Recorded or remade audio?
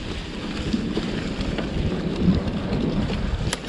recorded